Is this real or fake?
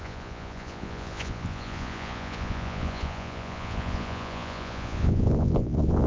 fake